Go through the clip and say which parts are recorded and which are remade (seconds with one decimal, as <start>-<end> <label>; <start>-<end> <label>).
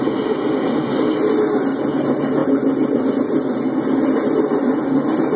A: 0.0-5.4 recorded